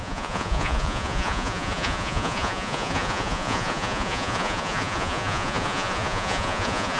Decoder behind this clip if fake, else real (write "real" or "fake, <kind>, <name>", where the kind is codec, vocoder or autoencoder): fake, vocoder, Vocos